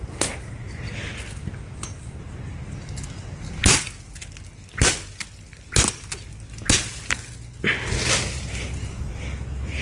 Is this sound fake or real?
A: real